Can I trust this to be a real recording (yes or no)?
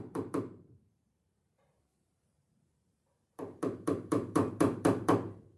no